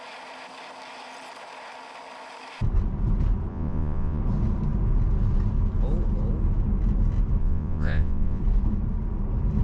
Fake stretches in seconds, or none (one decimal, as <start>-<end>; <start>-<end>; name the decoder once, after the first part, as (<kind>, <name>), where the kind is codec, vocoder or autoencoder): 3.5-4.2 (vocoder, Vocos); 7.4-8.4